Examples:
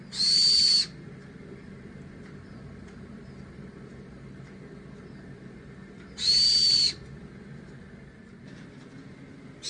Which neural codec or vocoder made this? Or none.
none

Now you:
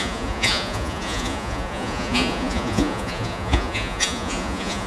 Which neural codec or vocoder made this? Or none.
vocoder, Vocos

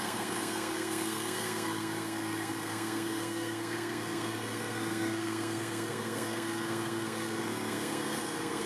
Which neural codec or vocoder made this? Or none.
codec, SNAC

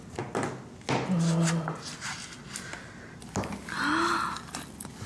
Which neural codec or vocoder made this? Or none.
none